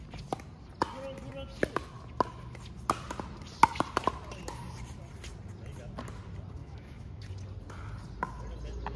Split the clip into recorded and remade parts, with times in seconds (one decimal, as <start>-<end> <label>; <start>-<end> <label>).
0.0-6.6 recorded; 6.6-7.2 remade; 7.2-9.0 recorded